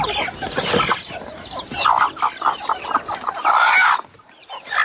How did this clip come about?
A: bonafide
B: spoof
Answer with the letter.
A